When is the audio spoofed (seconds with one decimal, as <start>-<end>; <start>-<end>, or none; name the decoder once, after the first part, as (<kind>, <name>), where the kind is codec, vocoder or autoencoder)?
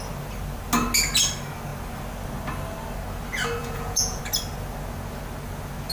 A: 3.6-4.2 (vocoder, Vocos)